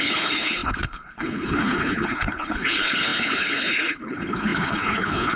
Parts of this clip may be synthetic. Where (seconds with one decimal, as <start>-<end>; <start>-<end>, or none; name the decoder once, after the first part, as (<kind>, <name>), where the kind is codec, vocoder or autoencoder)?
0.0-5.4 (codec, HILCodec)